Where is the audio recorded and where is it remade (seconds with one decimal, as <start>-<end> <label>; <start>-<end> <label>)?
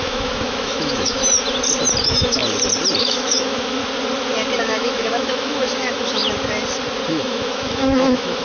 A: 0.0-1.2 remade; 1.2-2.0 recorded; 2.0-2.4 remade; 2.4-3.0 recorded; 3.0-3.8 remade; 3.8-4.6 recorded; 4.6-6.2 remade; 6.2-7.1 recorded; 7.1-8.4 remade